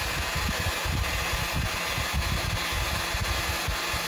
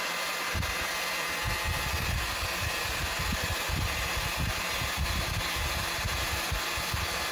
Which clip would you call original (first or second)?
first